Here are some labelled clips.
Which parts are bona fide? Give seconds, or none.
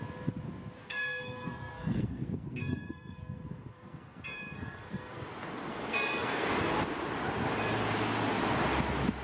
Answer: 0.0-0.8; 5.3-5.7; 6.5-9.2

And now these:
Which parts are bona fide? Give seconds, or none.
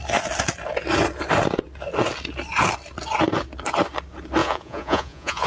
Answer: 0.0-4.4